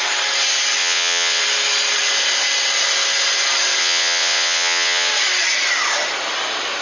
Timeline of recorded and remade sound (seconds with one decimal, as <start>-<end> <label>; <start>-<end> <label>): 0.0-0.8 recorded; 0.8-1.4 remade; 1.4-3.8 recorded; 3.8-5.1 remade; 5.1-6.8 recorded